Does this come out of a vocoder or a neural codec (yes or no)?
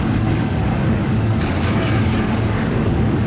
yes